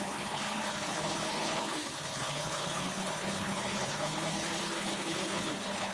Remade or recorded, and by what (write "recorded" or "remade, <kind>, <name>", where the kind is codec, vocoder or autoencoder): remade, codec, HILCodec